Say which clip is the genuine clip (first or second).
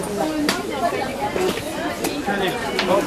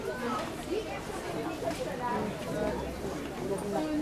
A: second